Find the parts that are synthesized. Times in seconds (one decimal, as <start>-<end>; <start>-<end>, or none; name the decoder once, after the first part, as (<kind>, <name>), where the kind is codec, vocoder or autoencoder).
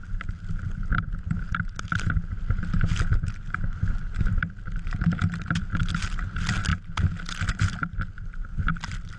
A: none